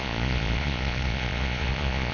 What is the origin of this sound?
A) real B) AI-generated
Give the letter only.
B